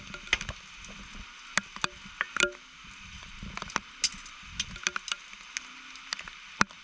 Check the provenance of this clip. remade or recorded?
recorded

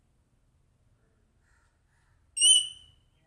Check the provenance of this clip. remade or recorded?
recorded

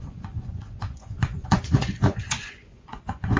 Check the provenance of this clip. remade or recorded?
remade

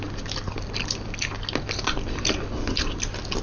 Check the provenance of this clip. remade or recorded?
recorded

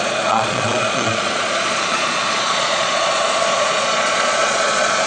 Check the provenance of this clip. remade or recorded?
remade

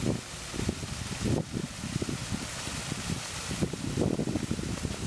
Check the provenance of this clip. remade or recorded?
recorded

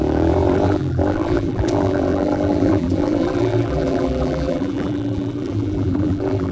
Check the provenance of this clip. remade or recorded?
remade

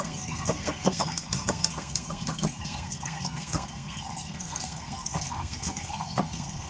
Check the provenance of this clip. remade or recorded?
remade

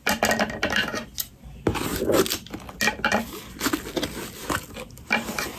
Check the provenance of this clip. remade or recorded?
recorded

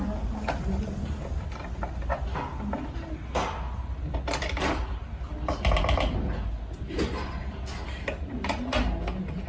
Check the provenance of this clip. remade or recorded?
recorded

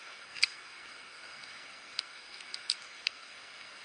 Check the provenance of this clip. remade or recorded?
remade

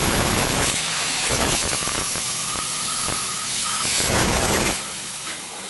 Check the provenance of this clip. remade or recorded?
remade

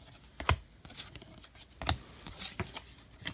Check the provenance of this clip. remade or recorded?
recorded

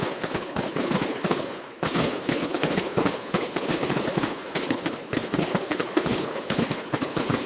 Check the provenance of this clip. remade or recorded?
remade